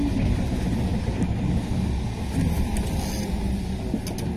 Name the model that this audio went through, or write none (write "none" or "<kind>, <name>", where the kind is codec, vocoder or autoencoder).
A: none